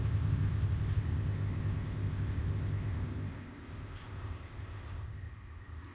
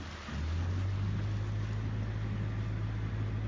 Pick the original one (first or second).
second